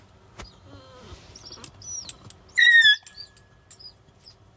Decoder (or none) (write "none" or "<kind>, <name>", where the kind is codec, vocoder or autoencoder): none